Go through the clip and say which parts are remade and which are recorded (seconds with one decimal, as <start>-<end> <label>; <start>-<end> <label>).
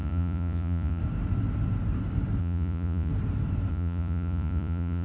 0.0-1.0 remade; 1.0-2.4 recorded; 2.4-3.1 remade; 3.1-3.7 recorded; 3.7-5.0 remade